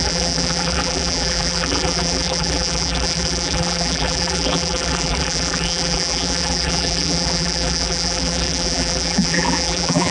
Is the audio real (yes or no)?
no